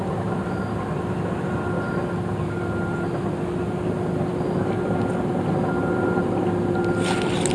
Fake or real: real